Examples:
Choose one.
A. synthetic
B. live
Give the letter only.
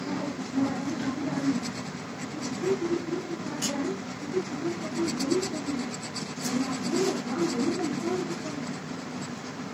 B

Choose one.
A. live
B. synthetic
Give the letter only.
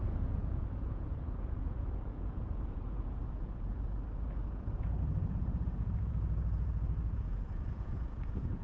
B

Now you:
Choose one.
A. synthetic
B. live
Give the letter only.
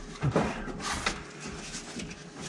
B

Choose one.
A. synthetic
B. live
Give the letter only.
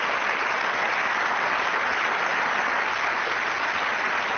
B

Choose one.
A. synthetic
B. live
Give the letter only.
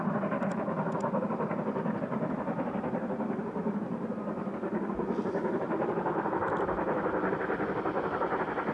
B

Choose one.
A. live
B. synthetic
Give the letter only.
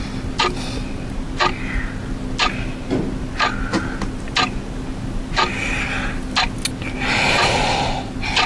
A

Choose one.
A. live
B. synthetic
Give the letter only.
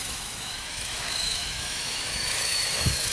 B